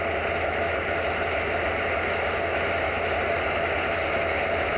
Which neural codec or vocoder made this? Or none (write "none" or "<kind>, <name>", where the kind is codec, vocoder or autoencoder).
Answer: none